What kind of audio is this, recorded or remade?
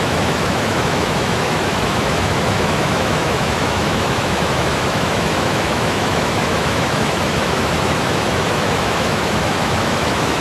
remade